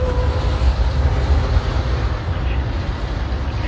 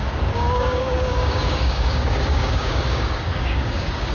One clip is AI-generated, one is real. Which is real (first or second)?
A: first